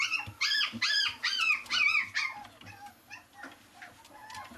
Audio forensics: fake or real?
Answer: real